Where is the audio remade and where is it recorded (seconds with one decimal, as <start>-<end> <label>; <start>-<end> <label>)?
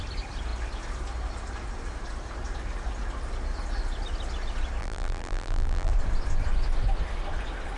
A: 0.0-4.8 recorded; 4.8-5.9 remade; 5.9-7.8 recorded